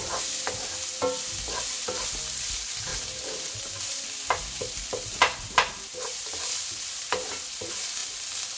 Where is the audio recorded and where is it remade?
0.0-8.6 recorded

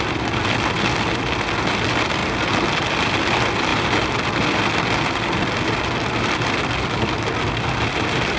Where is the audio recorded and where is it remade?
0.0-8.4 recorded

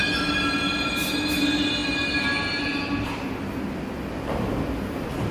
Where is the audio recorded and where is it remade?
0.0-5.3 recorded